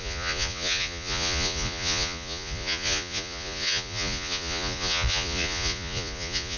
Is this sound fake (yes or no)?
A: yes